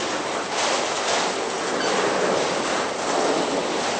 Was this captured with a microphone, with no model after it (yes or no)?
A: yes